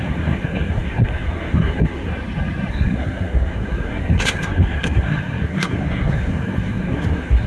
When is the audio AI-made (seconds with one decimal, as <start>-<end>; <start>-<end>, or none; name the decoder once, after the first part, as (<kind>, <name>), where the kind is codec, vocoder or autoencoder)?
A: 0.0-2.1 (codec, SNAC); 2.7-7.5